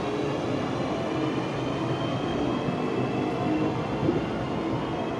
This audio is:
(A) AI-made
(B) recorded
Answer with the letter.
B